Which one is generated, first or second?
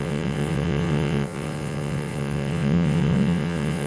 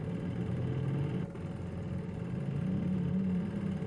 first